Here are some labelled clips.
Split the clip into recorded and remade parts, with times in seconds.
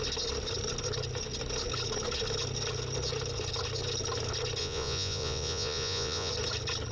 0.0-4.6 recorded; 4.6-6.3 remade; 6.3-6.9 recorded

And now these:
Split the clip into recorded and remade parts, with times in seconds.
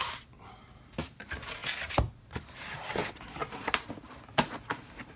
0.0-1.6 remade; 1.6-2.1 recorded; 2.1-3.0 remade; 3.0-3.6 recorded; 3.6-5.2 remade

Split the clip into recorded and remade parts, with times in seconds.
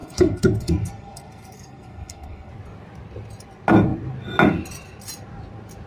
0.0-2.5 remade; 2.5-5.9 recorded